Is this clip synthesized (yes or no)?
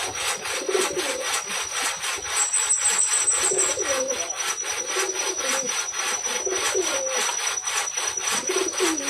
no